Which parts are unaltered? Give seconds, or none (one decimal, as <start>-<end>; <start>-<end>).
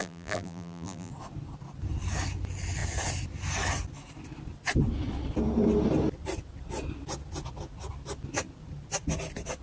1.1-9.6